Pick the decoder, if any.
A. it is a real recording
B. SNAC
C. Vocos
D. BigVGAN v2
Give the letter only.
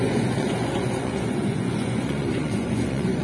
C